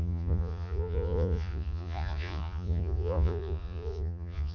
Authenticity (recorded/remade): remade